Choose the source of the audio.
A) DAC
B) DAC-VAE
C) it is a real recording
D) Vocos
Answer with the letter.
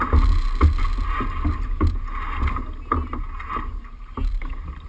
C